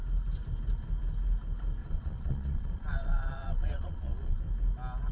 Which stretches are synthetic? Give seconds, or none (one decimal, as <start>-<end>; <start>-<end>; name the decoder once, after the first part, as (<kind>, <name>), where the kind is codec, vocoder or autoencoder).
1.8-4.4 (vocoder, Vocos)

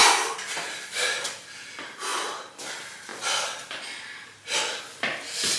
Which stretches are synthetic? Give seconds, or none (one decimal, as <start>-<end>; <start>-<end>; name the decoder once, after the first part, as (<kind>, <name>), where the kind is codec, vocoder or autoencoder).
none

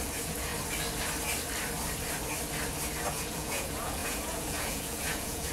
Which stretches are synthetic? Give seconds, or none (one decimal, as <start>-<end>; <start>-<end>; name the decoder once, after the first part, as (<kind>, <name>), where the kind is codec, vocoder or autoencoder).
0.0-0.5 (vocoder, Vocos); 3.1-5.5

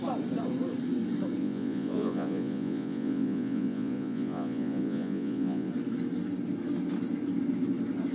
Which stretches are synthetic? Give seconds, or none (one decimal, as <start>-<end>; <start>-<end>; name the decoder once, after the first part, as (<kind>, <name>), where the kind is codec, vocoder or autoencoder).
1.4-5.7 (vocoder, Vocos)

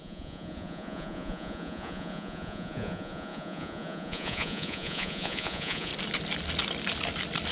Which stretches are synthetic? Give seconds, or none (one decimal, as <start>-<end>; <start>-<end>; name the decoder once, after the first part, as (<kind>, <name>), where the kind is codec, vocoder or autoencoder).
0.0-5.9 (vocoder, Vocos)

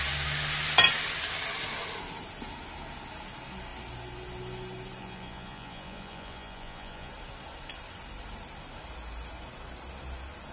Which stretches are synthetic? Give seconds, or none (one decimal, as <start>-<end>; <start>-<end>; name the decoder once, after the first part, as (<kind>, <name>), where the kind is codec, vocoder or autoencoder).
5.0-7.1 (vocoder, Vocos)

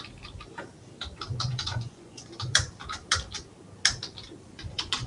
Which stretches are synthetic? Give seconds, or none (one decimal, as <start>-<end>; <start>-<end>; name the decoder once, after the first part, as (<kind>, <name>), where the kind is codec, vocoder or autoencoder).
1.5-2.7 (vocoder, Vocos); 4.4-5.1

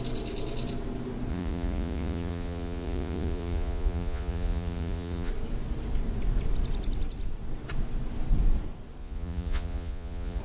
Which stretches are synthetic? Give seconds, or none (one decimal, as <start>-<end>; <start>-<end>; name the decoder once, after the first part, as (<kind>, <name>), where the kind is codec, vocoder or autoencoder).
1.3-5.3 (vocoder, Vocos); 9.0-10.4